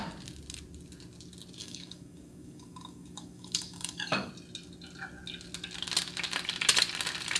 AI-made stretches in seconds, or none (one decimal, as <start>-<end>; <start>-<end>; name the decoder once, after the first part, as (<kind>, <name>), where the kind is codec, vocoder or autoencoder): 1.6-4.3 (codec, DAC)